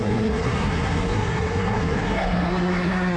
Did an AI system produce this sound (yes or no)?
yes